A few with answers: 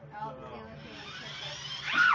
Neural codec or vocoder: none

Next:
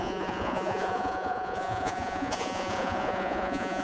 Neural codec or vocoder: vocoder, Vocos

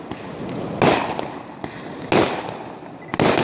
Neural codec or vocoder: none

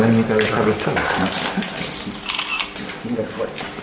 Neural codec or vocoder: none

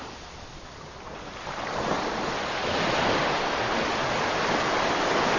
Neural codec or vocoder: none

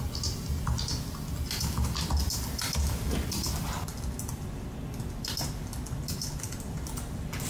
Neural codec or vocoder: none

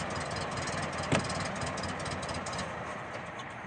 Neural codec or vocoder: none